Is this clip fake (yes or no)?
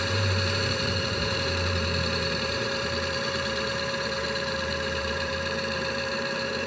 yes